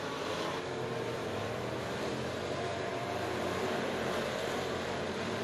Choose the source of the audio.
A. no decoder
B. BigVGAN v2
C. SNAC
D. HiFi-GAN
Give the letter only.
B